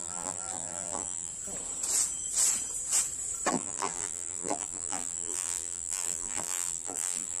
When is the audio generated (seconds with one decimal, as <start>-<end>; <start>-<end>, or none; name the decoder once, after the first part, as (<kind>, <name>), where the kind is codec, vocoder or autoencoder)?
0.0-1.3 (vocoder, BigVGAN v2); 3.5-7.4